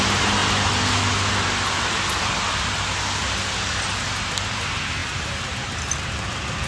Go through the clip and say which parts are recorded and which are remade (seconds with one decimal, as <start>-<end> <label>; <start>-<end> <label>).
0.0-0.4 remade; 0.4-4.4 recorded; 4.4-6.7 remade